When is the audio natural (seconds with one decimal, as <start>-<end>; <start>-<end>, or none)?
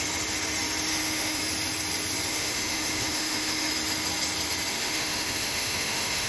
0.0-0.9; 1.4-2.3; 3.7-4.7